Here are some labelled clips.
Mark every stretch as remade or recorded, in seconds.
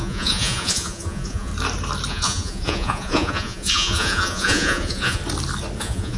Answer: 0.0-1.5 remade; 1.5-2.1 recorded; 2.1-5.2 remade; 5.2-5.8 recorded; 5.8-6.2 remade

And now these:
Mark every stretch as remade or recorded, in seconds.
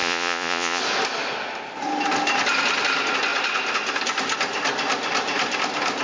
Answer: 0.0-0.8 remade; 0.8-6.0 recorded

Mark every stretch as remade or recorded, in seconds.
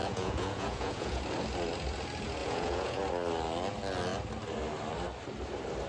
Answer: 0.0-1.2 remade; 1.2-2.4 recorded; 2.4-3.0 remade; 3.0-5.9 recorded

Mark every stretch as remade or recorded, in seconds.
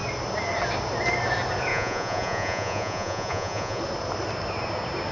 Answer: 0.0-1.7 recorded; 1.7-3.8 remade; 3.8-5.1 recorded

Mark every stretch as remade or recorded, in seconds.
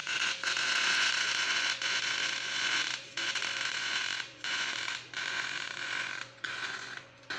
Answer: 0.0-7.4 remade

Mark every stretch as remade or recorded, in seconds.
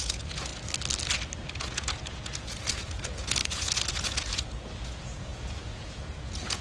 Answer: 0.0-0.5 remade; 0.5-1.6 recorded; 1.6-6.6 remade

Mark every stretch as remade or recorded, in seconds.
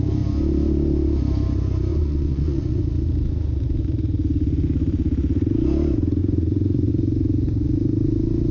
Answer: 0.0-1.9 recorded; 1.9-2.8 remade; 2.8-6.2 recorded; 6.2-6.9 remade; 6.9-8.5 recorded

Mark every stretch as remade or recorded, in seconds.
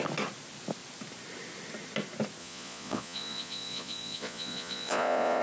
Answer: 0.0-2.4 recorded; 2.4-5.4 remade